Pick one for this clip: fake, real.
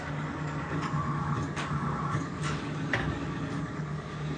fake